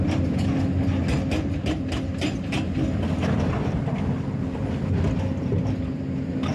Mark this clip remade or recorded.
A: recorded